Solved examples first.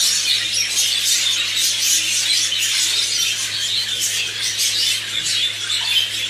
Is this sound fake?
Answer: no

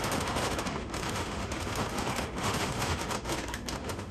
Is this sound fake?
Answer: yes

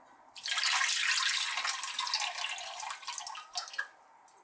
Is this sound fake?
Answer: no